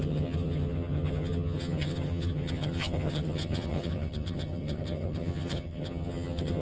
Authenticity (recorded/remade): remade